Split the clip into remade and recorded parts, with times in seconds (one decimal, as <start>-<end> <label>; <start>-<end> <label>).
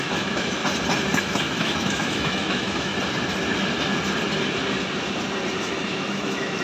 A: 0.0-0.6 remade; 0.6-1.2 recorded; 1.2-2.9 remade; 2.9-5.6 recorded; 5.6-6.6 remade